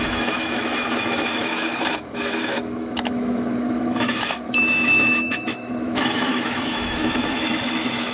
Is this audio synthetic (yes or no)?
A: yes